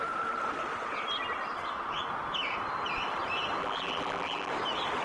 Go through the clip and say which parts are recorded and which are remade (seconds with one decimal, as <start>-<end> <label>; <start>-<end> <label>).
0.0-3.6 recorded; 3.6-4.5 remade; 4.5-5.0 recorded